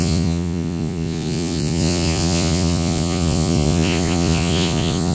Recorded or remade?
remade